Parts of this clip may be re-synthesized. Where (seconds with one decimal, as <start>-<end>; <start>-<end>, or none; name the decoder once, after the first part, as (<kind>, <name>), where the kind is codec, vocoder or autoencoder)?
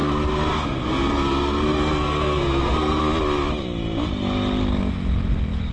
0.0-3.0 (codec, SNAC)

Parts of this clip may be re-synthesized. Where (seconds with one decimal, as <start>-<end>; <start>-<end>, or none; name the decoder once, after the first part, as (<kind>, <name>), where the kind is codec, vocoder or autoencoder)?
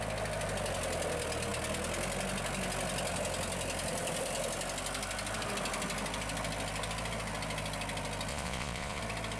8.3-9.0 (vocoder, Vocos)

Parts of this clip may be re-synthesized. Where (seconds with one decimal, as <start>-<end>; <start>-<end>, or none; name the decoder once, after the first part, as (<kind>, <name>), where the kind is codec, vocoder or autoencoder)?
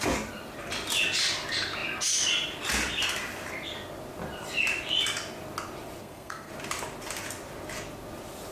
6.0-6.5 (codec, SNAC)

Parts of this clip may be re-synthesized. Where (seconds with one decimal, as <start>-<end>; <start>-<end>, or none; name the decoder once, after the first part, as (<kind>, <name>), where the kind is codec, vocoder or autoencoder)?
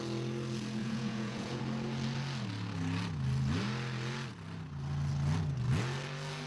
0.8-1.6 (vocoder, Vocos)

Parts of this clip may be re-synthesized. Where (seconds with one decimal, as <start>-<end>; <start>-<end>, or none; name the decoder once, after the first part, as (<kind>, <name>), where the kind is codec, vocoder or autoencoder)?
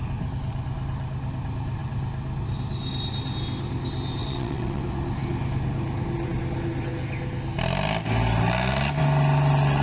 4.2-4.8 (vocoder, WaveNeXt)